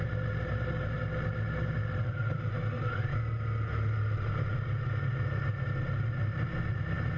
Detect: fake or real real